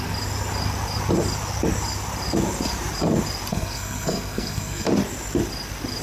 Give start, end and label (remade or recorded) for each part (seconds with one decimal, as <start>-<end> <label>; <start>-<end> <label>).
0.0-3.5 recorded; 3.5-4.9 remade; 4.9-6.0 recorded